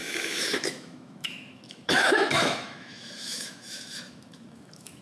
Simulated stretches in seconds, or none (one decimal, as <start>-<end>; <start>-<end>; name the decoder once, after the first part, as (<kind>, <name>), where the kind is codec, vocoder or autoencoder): 0.0-5.0 (autoencoder, DAC-VAE)